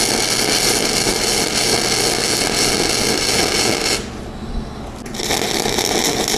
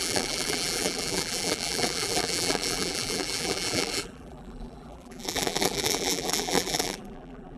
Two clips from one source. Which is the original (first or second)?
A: first